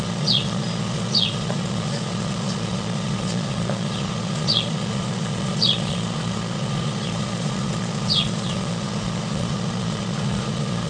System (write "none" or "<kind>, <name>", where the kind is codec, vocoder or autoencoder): vocoder, Vocos